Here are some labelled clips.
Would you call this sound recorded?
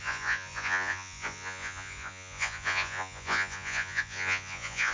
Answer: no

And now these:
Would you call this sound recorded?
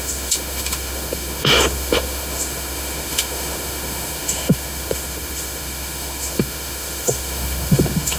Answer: no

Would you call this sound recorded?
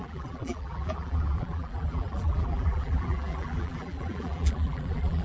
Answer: no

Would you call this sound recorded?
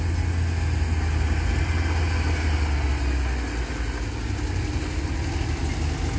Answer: yes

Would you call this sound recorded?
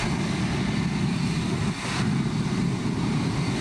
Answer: yes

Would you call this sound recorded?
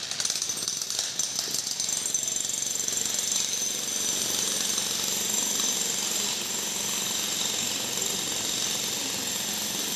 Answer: yes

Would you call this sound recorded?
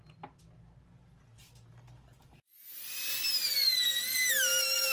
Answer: yes